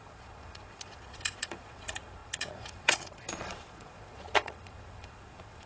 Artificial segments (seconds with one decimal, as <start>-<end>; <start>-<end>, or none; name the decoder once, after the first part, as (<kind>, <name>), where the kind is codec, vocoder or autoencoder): 0.0-5.7 (vocoder, Vocos)